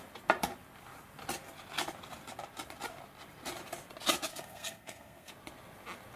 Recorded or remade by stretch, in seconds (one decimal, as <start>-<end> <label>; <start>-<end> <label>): 0.0-4.3 recorded; 4.3-5.3 remade; 5.3-6.2 recorded